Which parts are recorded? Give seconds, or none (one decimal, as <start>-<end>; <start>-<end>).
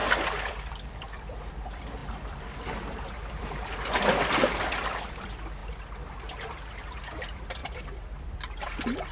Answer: 5.6-6.7